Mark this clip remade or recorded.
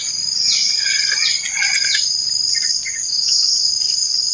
recorded